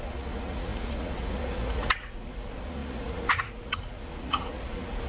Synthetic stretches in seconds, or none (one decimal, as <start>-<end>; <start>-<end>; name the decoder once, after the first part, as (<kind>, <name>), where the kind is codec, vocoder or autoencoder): 0.0-5.1 (vocoder, Vocos)